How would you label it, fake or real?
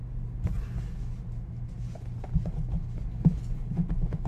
real